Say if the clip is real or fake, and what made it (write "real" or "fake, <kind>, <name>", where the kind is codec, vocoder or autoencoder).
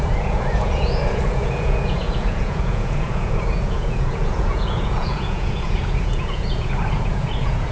fake, vocoder, Vocos